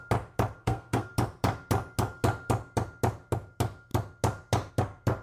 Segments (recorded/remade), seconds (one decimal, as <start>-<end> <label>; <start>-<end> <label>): 0.0-0.6 recorded; 0.6-1.1 remade; 1.1-5.2 recorded